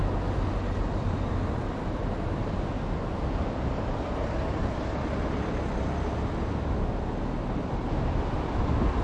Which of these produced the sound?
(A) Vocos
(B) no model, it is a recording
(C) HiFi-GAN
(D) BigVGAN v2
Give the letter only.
B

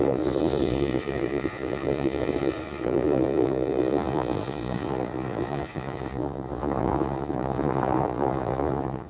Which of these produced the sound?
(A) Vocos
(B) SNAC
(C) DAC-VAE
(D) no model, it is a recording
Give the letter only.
A